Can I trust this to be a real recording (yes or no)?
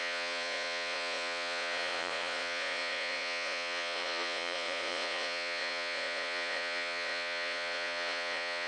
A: no